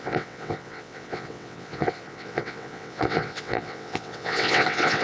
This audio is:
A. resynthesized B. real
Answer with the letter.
A